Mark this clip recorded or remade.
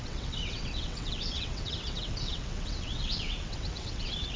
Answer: remade